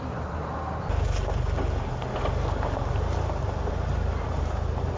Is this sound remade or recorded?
recorded